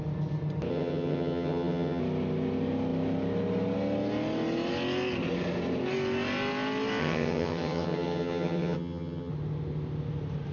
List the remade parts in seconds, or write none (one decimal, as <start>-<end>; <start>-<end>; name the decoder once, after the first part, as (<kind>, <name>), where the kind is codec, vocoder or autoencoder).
0.7-2.0 (vocoder, HiFi-GAN); 7.0-9.3